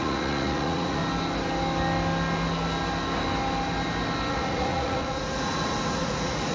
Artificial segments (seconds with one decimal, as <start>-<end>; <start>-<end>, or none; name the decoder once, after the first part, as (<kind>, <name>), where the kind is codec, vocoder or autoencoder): 0.0-1.0 (vocoder, Vocos); 4.3-6.5